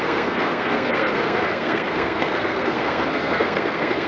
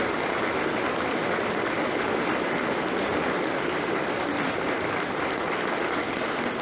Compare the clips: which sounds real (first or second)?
second